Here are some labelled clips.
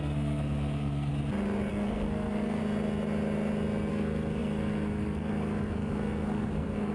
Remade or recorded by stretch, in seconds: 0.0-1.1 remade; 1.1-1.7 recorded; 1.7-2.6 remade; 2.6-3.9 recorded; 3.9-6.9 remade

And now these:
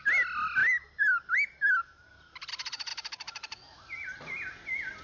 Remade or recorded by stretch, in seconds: 0.0-5.0 recorded

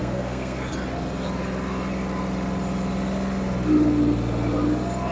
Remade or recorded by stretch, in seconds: 0.0-0.7 remade; 0.7-5.1 recorded

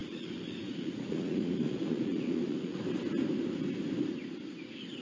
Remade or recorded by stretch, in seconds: 0.0-2.8 remade; 2.8-5.0 recorded

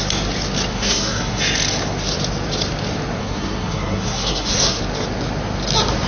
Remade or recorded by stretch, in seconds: 0.0-0.7 recorded; 0.7-1.4 remade; 1.4-3.2 recorded; 3.2-4.8 remade; 4.8-6.1 recorded

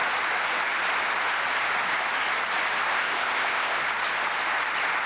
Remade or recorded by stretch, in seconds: 0.0-2.9 recorded; 2.9-3.8 remade; 3.8-5.1 recorded

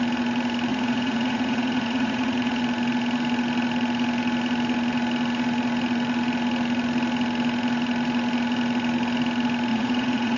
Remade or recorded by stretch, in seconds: 0.0-0.7 recorded; 0.7-2.6 remade; 2.6-9.7 recorded; 9.7-10.4 remade

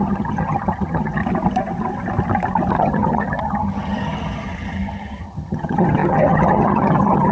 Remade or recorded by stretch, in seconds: 0.0-1.2 remade; 1.2-2.8 recorded; 2.8-7.3 remade